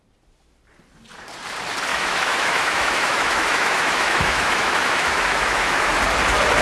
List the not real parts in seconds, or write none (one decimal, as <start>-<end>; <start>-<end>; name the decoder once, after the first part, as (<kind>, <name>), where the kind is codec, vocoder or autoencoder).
1.9-5.9 (autoencoder, DAC-VAE)